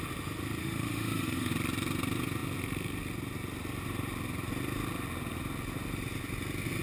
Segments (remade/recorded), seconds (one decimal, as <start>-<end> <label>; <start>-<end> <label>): 0.0-0.6 recorded; 0.6-1.5 remade; 1.5-6.8 recorded